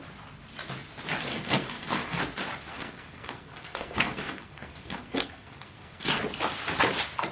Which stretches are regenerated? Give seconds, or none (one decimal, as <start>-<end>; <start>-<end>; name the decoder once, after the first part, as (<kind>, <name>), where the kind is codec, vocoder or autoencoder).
1.3-2.2 (codec, SNAC); 2.7-6.2